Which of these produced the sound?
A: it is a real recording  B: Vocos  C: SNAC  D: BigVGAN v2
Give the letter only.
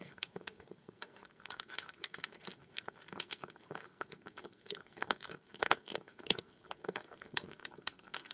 C